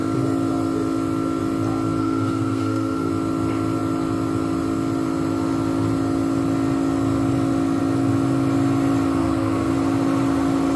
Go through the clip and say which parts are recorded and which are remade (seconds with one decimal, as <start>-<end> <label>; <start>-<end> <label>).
0.0-2.0 recorded; 2.0-3.1 remade; 3.1-9.2 recorded; 9.2-9.7 remade; 9.7-10.8 recorded